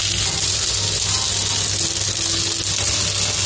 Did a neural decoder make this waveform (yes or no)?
no